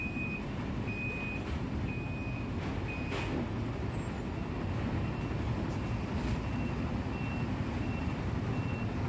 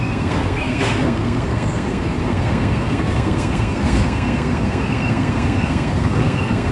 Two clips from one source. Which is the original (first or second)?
first